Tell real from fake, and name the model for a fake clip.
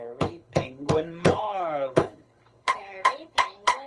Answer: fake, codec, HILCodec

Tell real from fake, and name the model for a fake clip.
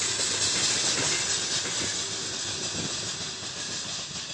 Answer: real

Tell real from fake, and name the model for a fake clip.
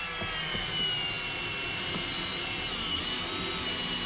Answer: real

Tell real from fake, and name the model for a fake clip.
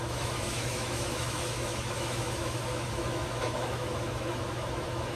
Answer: fake, autoencoder, DAC-VAE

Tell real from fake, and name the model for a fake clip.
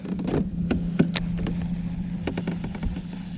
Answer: real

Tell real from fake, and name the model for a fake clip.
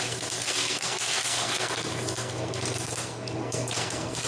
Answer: fake, codec, SNAC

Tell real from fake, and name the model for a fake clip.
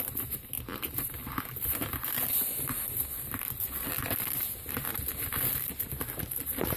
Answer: real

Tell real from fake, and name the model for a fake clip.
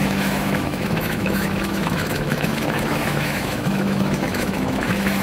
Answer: fake, autoencoder, DAC-VAE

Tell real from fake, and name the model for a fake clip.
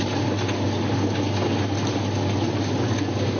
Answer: real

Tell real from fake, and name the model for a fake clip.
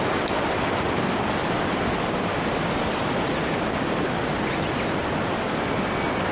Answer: real